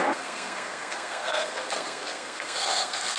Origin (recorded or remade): remade